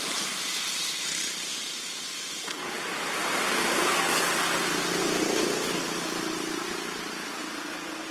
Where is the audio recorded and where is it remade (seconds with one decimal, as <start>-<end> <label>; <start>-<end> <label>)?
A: 0.0-1.5 remade; 1.5-3.1 recorded; 3.1-3.9 remade; 3.9-8.1 recorded